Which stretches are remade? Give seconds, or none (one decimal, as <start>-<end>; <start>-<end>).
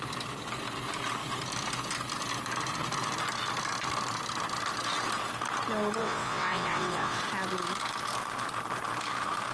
6.0-7.2